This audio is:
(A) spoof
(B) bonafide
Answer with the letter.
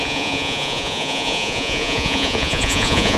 A